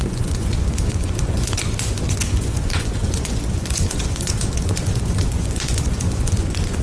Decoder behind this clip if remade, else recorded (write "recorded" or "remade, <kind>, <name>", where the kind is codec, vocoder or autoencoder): remade, vocoder, Vocos